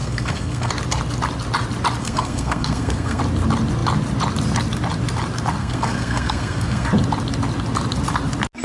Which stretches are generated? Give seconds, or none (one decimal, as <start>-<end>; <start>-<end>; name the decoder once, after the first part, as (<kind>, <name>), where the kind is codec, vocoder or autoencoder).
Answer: 0.0-0.7 (codec, SNAC); 2.0-3.2; 5.6-6.9